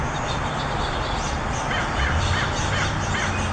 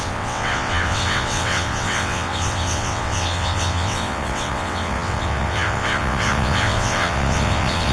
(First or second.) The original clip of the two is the first